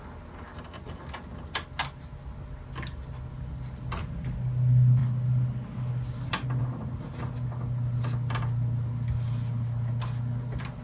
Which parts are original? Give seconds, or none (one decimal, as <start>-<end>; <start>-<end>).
0.0-10.8